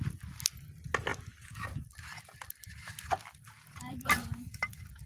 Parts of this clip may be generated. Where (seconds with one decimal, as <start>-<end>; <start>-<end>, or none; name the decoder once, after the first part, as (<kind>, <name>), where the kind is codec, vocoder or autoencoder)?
none